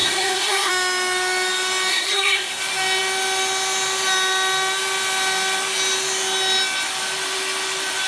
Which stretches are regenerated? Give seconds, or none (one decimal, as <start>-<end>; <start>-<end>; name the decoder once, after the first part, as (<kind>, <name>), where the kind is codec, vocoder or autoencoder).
0.0-0.7 (codec, SNAC); 1.9-2.6